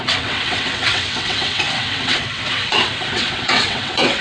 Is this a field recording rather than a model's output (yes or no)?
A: no